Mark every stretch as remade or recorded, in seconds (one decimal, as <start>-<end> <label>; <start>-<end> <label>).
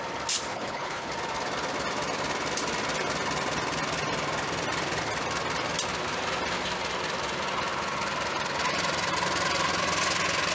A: 0.0-0.5 recorded; 0.5-1.1 remade; 1.1-10.5 recorded